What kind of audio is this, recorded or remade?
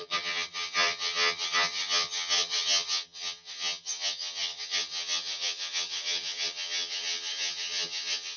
remade